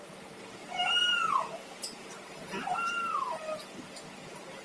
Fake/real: real